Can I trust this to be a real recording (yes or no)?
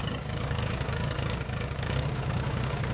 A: no